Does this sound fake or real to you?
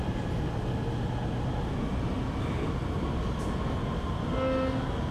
real